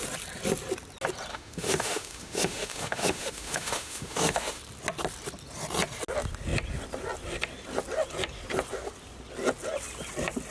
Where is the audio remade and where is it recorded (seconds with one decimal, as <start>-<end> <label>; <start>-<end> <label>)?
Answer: 0.0-1.3 recorded; 1.3-4.6 remade; 4.6-10.5 recorded